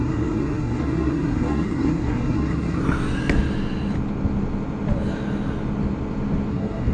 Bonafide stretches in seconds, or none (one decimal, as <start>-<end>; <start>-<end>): 2.8-6.5